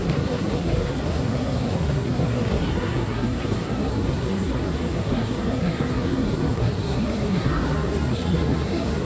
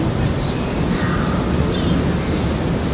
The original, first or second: second